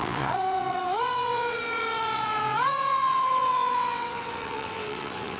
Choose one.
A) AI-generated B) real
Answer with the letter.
A